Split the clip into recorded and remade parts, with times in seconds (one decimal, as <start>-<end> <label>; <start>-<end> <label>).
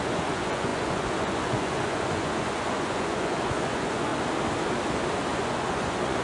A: 0.0-4.1 remade; 4.1-5.3 recorded; 5.3-6.2 remade